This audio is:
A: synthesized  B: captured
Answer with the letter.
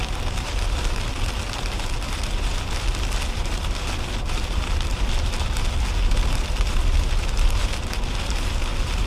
B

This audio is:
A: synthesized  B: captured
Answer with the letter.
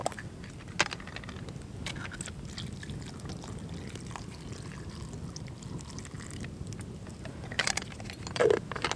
B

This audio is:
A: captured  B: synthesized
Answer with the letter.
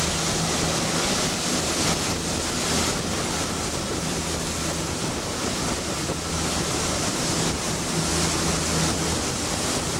A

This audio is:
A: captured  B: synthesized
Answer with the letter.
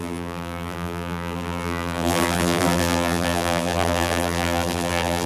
B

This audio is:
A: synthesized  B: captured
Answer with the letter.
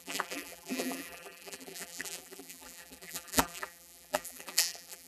A